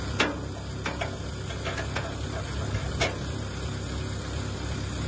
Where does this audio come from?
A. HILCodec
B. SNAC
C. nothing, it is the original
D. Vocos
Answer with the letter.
C